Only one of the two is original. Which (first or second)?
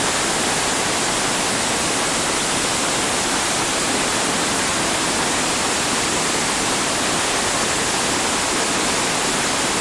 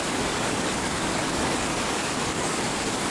first